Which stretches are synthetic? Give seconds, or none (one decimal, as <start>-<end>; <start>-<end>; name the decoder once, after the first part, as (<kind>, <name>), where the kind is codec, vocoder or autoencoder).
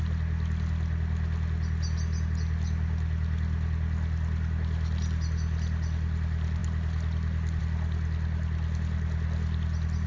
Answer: none